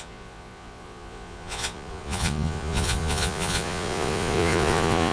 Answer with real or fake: fake